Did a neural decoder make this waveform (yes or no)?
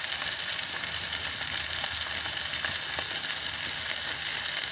no